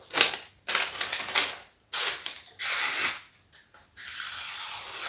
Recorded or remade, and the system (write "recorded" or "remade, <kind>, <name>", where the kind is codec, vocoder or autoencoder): recorded